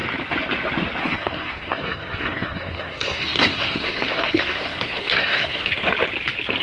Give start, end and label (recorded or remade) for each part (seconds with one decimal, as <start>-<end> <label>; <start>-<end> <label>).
0.0-1.0 recorded; 1.0-5.7 remade; 5.7-6.6 recorded